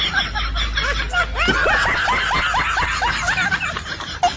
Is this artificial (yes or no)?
no